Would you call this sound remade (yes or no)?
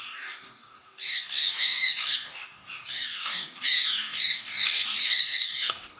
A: yes